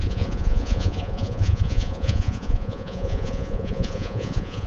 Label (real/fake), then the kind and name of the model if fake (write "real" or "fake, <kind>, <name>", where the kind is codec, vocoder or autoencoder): fake, vocoder, Vocos